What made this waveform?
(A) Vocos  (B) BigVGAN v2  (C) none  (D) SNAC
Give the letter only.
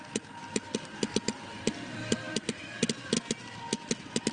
C